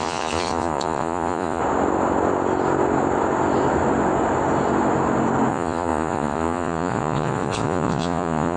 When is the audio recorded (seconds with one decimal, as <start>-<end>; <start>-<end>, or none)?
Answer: 1.6-5.5

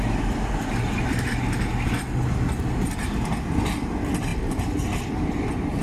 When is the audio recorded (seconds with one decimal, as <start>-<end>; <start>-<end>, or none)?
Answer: 0.0-5.8